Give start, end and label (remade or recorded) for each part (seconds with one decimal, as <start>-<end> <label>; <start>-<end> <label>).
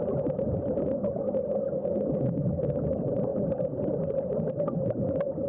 0.0-5.5 recorded